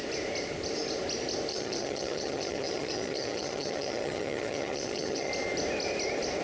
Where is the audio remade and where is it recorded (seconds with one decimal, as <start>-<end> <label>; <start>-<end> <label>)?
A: 0.0-1.5 recorded; 1.5-5.3 remade; 5.3-6.4 recorded